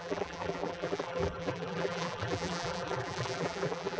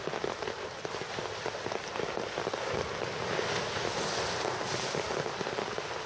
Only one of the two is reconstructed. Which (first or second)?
first